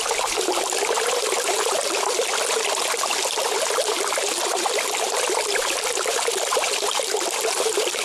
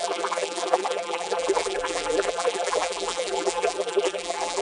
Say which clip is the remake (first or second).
second